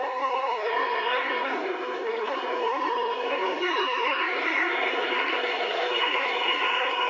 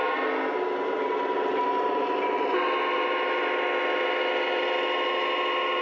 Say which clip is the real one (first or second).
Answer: second